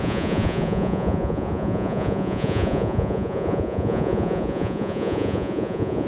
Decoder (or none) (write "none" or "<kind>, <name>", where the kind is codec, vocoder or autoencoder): vocoder, Vocos